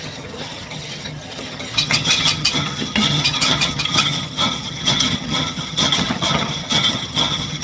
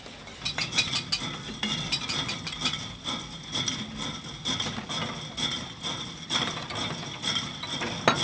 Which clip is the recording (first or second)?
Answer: second